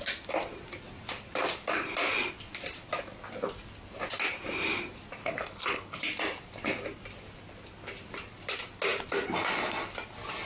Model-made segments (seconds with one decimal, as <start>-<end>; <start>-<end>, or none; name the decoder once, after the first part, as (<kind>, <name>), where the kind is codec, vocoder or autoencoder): 5.2-6.0 (codec, HILCodec)